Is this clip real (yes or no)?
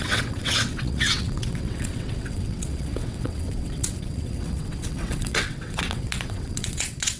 no